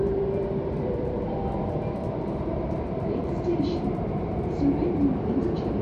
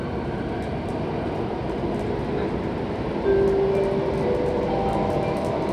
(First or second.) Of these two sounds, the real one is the second